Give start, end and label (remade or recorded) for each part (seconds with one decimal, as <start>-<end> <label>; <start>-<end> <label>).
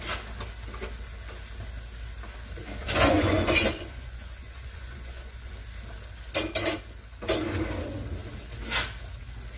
0.0-2.8 recorded; 2.8-5.5 remade; 5.5-9.6 recorded